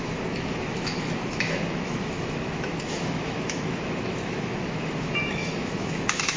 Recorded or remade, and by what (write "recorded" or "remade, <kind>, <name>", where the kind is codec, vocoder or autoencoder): remade, autoencoder, DAC-VAE